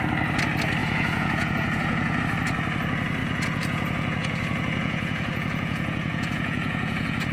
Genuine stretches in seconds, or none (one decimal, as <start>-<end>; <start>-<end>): 0.0-0.8; 2.2-3.2

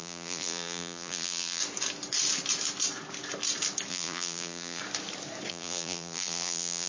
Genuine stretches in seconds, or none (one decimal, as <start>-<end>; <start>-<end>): 1.6-3.9; 4.8-5.5

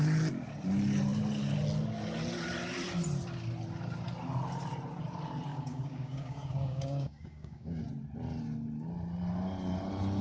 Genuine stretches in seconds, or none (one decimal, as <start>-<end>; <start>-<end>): 0.0-5.5; 7.8-10.2

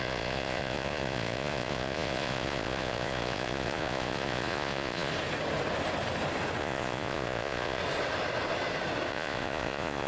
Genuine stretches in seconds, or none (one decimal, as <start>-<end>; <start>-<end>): 5.1-6.6; 7.8-9.1

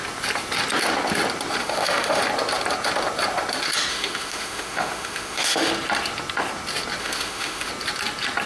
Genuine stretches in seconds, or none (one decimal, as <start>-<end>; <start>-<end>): 0.0-1.6; 2.2-3.9; 5.7-7.0; 7.7-8.5

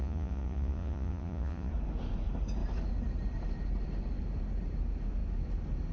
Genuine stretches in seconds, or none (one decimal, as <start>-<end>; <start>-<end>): 1.7-5.9

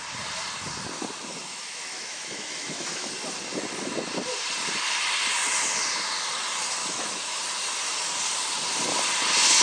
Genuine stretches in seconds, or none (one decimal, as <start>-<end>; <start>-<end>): 0.0-1.4; 3.1-6.8; 7.4-9.6